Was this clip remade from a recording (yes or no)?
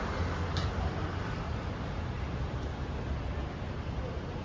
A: no